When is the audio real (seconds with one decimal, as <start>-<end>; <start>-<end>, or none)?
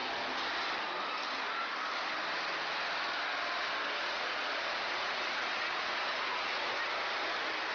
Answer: 0.0-4.0; 6.7-7.7